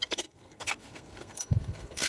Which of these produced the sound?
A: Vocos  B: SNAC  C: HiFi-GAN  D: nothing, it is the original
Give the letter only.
B